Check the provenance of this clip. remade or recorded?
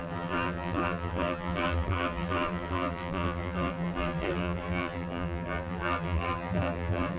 remade